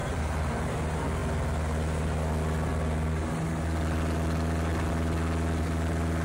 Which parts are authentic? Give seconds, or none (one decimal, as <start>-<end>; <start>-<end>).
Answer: 0.5-6.2